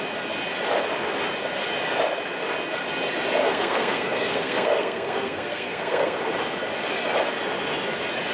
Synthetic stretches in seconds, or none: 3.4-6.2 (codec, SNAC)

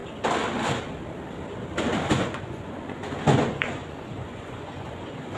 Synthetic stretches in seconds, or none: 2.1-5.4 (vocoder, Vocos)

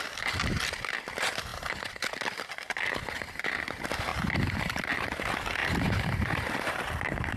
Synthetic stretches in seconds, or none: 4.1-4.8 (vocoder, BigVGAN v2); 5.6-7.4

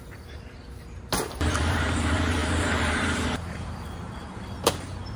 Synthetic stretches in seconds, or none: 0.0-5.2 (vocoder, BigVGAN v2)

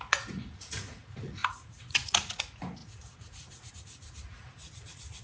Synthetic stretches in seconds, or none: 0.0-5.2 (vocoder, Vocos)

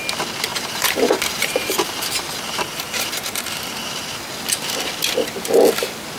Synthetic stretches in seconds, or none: 0.5-4.2 (vocoder, BigVGAN v2)

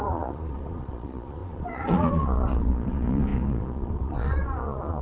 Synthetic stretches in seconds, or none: 0.0-5.0 (vocoder, Vocos)

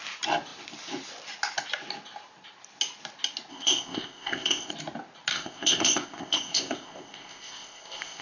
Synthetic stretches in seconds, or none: 3.5-4.7 (codec, ZipCodec); 5.3-8.2